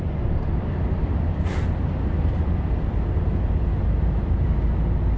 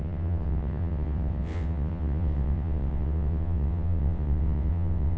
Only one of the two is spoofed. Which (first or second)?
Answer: second